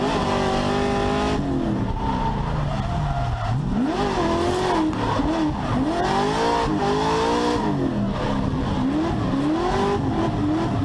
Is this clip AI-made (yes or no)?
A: no